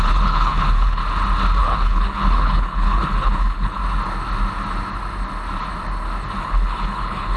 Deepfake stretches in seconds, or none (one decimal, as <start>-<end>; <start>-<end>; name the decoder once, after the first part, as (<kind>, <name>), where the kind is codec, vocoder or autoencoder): 0.0-1.0 (codec, HILCodec); 1.6-3.8; 6.4-7.4